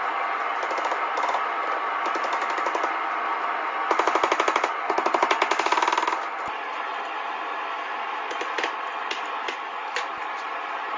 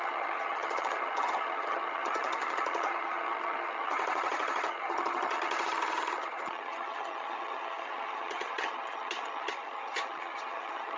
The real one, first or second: first